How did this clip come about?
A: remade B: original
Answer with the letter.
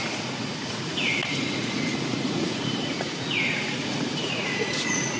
A